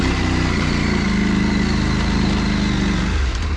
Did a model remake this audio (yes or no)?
no